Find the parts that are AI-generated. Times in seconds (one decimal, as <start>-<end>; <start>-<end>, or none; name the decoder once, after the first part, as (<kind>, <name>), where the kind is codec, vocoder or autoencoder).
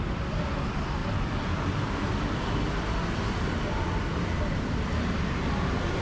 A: 1.0-2.5 (vocoder, BigVGAN v2)